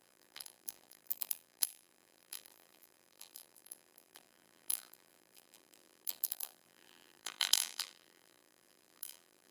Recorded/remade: remade